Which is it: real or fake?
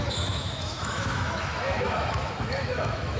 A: fake